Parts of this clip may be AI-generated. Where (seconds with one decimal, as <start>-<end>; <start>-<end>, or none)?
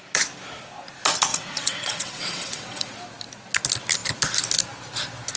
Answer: 1.3-2.9